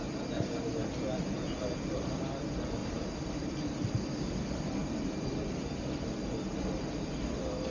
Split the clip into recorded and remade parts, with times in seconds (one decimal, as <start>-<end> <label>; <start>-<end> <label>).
0.0-2.8 recorded; 2.8-4.0 remade; 4.0-4.8 recorded; 4.8-5.3 remade; 5.3-7.7 recorded